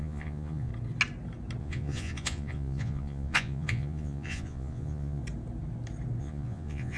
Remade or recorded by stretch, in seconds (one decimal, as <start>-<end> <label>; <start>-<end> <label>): 0.0-0.7 remade; 0.7-1.6 recorded; 1.6-5.2 remade; 5.2-6.2 recorded; 6.2-7.0 remade